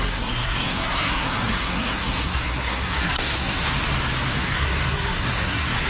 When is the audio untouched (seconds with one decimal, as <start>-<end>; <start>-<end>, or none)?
3.7-4.4

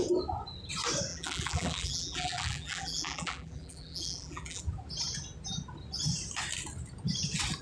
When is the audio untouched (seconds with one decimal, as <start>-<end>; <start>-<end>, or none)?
0.0-1.1; 4.6-7.6

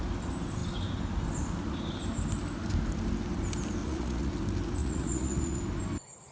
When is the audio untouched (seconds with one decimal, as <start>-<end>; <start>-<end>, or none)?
0.0-3.8; 4.3-4.8; 5.6-6.3

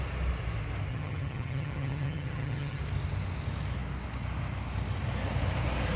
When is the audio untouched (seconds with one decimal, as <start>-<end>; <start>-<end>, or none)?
0.0-0.9; 2.8-6.0

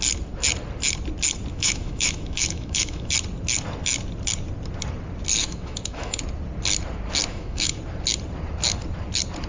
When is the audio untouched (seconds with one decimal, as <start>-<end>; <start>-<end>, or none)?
0.0-1.5; 3.1-5.4; 6.2-7.3; 7.8-9.5

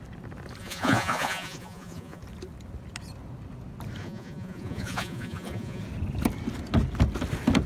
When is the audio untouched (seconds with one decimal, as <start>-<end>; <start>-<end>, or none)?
0.0-0.6; 2.2-4.0; 5.8-7.7

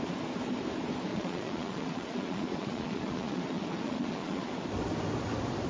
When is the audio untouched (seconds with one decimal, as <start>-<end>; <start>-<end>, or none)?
0.0-1.1; 4.5-5.7